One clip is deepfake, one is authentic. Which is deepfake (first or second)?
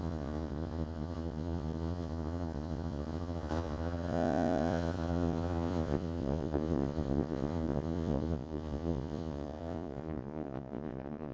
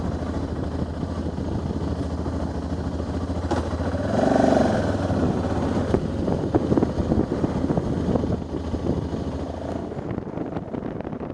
first